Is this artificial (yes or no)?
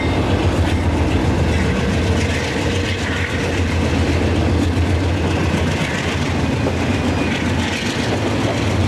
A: no